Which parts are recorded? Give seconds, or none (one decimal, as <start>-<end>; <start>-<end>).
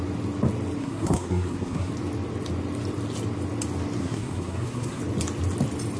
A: 0.0-0.8; 1.9-4.0; 5.0-6.0